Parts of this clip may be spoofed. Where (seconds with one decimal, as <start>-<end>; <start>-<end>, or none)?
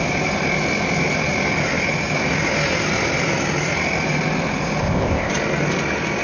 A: 4.8-5.3